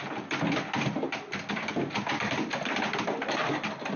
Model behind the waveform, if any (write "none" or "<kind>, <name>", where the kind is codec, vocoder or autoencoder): none